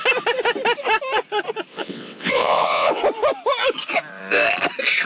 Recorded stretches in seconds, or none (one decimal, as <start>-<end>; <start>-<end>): 0.0-1.7; 3.0-5.1